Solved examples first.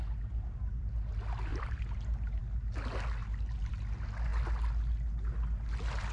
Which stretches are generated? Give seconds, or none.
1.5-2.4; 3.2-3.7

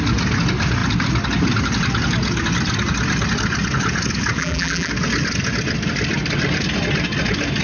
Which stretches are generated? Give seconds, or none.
4.4-4.9

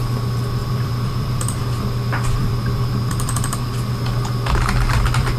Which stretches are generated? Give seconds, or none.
0.6-1.6; 2.4-3.6

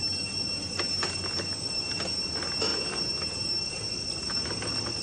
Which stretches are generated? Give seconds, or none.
none